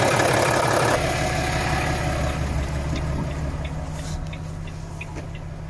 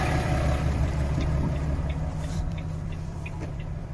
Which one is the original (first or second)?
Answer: first